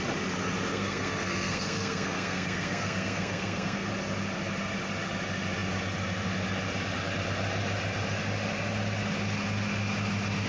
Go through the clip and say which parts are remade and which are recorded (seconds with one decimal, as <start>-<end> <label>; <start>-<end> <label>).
0.0-0.7 recorded; 0.7-3.9 remade; 3.9-10.5 recorded